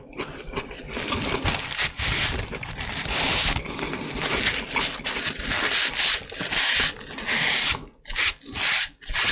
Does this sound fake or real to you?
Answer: real